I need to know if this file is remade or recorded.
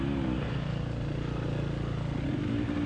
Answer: recorded